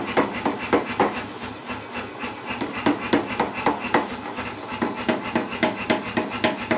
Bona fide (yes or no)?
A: yes